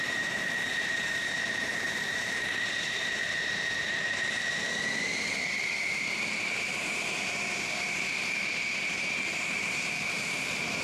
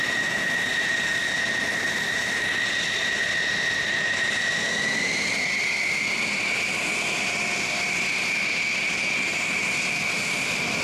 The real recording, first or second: second